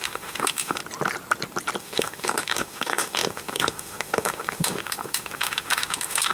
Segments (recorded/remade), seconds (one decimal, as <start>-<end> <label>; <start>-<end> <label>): 0.0-0.8 remade; 0.8-1.8 recorded; 1.8-6.3 remade